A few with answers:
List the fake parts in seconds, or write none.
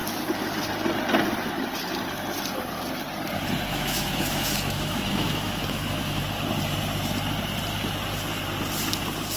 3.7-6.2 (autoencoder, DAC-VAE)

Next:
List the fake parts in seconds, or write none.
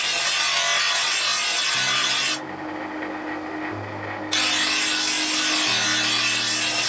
none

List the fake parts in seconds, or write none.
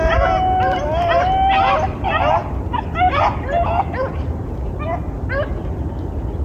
none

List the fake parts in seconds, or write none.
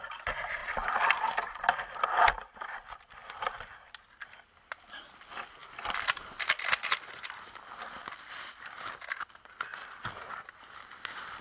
0.6-1.6 (vocoder, BigVGAN v2); 3.2-3.7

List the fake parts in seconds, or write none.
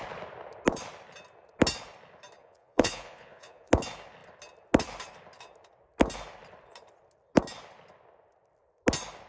2.4-3.7 (vocoder, Vocos)